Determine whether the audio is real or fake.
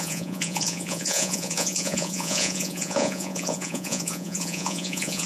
fake